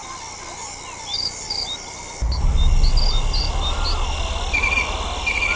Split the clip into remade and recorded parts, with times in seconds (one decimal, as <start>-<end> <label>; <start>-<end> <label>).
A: 0.0-5.6 recorded